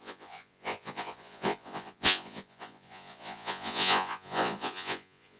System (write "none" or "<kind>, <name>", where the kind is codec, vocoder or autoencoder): vocoder, Vocos